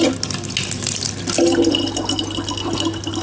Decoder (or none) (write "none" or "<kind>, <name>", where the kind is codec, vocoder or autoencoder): none